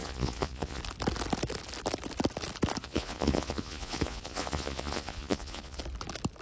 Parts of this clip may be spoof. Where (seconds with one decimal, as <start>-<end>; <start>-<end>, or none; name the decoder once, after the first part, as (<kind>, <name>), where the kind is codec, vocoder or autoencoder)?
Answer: 0.0-0.8 (vocoder, Vocos); 2.8-5.8